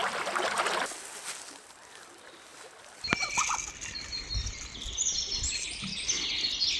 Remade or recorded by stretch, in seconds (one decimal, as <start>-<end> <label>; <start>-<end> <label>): 0.0-6.8 recorded